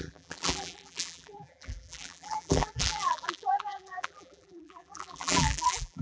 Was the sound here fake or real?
fake